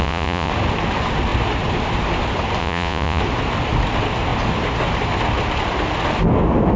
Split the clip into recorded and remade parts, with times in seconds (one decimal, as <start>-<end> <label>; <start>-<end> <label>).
0.0-0.5 remade; 0.5-2.6 recorded; 2.6-3.2 remade; 3.2-6.8 recorded